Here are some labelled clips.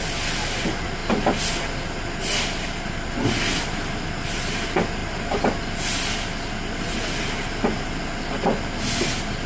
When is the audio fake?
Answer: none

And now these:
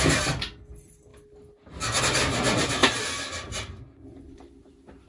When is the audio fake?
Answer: none

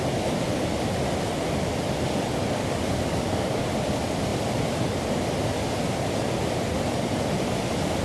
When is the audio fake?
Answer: 2.6-3.7 (codec, DAC)

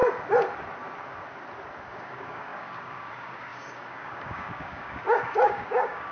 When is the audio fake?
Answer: 1.9-6.1 (codec, DAC)

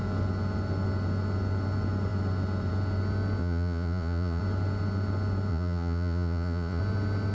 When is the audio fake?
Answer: 3.4-4.4 (vocoder, Vocos); 5.5-6.8

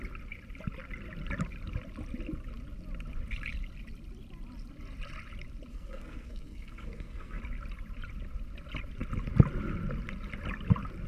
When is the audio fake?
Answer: 5.7-7.4 (codec, SNAC)

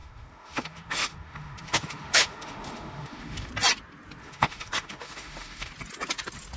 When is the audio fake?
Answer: 0.0-3.5 (autoencoder, DAC-VAE); 4.2-5.7